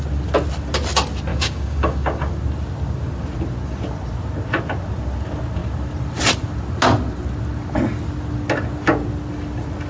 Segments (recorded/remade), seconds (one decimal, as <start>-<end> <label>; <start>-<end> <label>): 0.0-1.3 recorded; 1.3-2.3 remade; 2.3-9.9 recorded